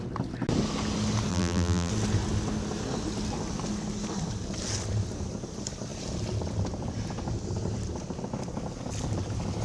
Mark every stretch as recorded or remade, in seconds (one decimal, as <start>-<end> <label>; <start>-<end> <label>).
0.0-1.3 recorded; 1.3-1.9 remade; 1.9-9.6 recorded